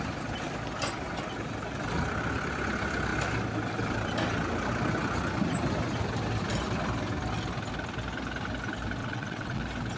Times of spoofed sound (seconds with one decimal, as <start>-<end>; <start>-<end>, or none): 9.0-9.6